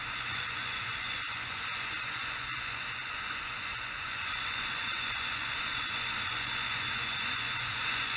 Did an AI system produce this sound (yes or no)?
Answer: yes